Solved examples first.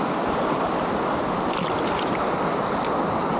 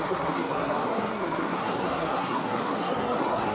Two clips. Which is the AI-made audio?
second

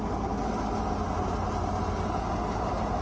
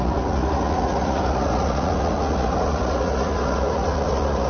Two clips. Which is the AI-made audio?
second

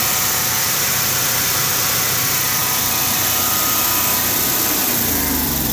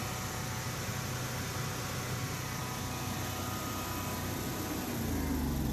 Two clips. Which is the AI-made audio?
first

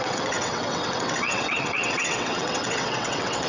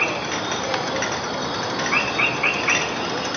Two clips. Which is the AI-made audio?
first